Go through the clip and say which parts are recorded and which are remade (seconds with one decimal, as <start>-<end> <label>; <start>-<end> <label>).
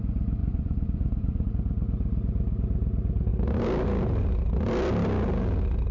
0.0-0.4 recorded; 0.4-1.5 remade; 1.5-5.9 recorded